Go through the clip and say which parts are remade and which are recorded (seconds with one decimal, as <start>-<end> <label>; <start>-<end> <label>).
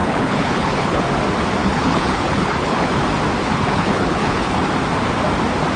0.0-1.0 remade; 1.0-1.6 recorded; 1.6-3.0 remade; 3.0-3.4 recorded; 3.4-4.7 remade; 4.7-5.8 recorded